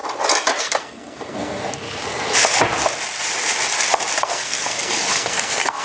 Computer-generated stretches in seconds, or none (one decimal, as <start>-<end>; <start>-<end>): 0.6-1.6; 4.2-5.8